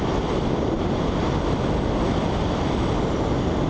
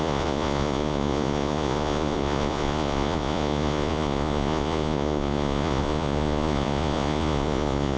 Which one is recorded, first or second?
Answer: first